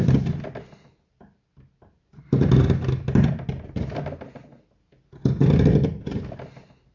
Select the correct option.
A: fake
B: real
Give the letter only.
B